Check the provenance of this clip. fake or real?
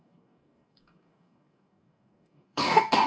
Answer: fake